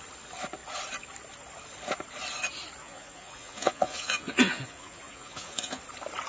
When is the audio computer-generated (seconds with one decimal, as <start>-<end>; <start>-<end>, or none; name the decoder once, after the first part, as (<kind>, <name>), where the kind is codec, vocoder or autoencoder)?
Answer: 2.8-5.8 (vocoder, Vocos)